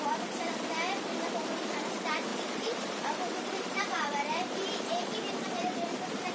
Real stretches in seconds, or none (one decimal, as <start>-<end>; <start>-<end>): 0.0-2.3